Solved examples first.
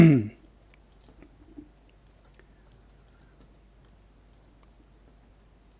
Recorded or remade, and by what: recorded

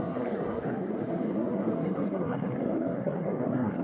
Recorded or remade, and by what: remade, codec, SNAC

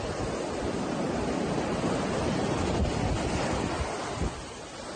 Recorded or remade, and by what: recorded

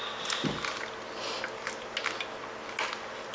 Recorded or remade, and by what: recorded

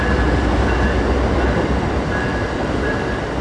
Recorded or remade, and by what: recorded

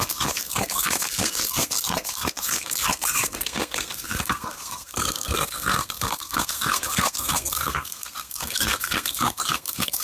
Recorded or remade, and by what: remade, codec, SNAC